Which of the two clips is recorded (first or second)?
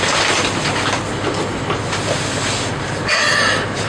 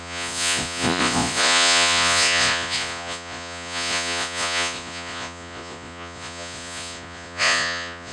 first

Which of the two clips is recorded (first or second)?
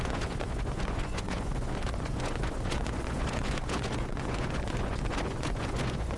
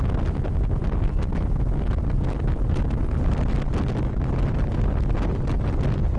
second